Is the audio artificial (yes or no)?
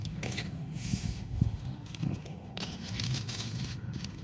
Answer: yes